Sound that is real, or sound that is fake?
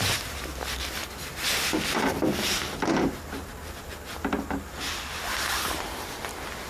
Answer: real